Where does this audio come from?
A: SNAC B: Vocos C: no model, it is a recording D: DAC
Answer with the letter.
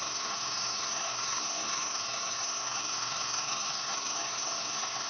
A